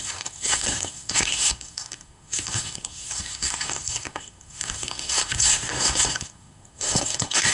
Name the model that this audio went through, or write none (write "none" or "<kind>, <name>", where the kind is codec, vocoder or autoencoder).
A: codec, SNAC